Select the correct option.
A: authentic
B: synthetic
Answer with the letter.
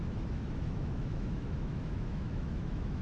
B